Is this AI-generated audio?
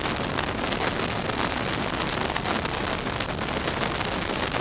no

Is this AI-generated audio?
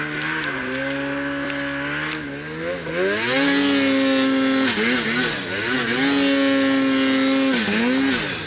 no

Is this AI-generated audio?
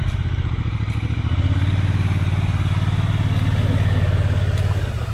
no